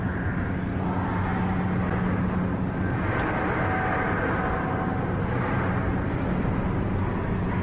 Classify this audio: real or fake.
real